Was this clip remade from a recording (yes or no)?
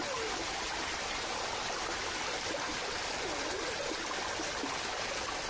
no